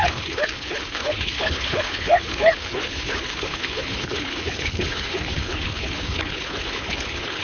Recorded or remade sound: remade